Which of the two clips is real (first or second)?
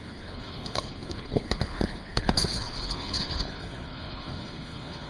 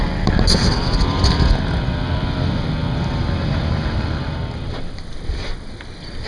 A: second